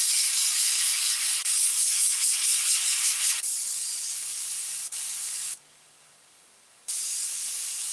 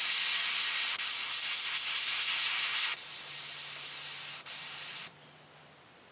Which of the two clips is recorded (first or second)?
second